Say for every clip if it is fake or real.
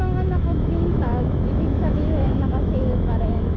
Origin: fake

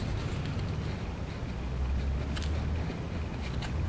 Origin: real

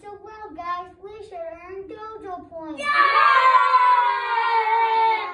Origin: real